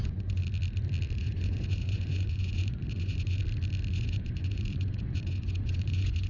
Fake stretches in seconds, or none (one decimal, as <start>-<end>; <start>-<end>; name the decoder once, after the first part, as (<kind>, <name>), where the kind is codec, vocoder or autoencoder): 0.0-0.4 (vocoder, Vocos); 1.2-3.4; 3.9-6.3